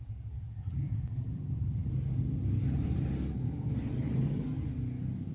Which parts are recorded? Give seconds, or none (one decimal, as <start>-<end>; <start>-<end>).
1.8-5.3